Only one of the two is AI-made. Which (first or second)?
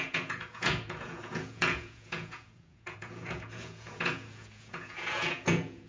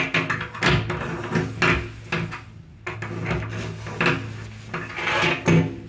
first